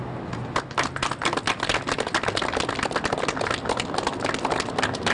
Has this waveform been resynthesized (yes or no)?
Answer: no